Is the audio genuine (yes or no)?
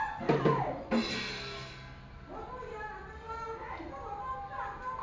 yes